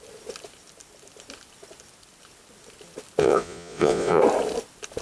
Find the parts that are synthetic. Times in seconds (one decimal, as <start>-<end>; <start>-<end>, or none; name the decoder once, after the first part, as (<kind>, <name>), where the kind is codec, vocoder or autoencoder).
3.2-4.2 (vocoder, Vocos)